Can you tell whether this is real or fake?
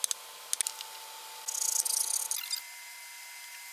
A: real